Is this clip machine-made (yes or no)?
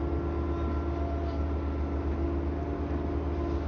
no